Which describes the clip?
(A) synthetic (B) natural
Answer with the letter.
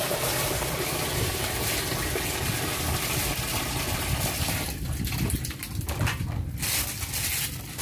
B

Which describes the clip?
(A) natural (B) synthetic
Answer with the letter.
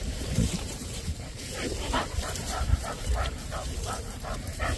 B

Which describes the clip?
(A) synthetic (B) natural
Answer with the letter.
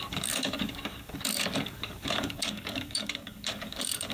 A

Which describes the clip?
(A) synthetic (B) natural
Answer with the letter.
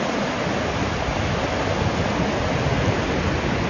B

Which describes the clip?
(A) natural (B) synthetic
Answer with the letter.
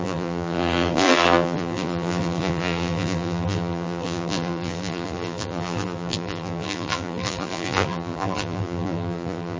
B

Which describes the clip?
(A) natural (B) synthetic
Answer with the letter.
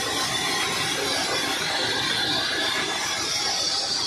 A